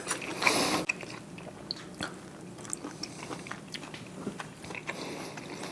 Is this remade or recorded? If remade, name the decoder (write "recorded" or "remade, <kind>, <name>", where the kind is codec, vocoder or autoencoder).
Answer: recorded